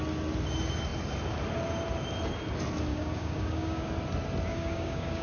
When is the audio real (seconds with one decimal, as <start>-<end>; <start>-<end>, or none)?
0.0-2.9; 3.9-4.5